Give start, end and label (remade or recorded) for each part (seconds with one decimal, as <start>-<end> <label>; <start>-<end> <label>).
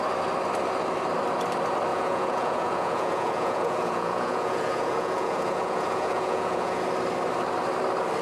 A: 0.0-1.9 recorded; 1.9-6.8 remade; 6.8-8.2 recorded